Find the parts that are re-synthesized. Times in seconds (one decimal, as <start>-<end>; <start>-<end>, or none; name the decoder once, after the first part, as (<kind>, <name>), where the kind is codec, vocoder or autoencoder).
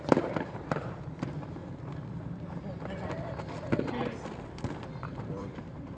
0.0-1.6 (vocoder, BigVGAN v2); 5.2-6.0